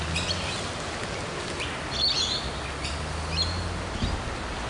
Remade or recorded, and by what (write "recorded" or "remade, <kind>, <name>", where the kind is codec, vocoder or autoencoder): recorded